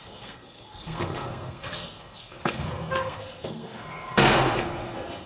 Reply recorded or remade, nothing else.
remade